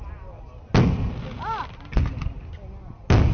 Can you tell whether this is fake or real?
real